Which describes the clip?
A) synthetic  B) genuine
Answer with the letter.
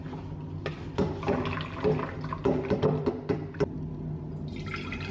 B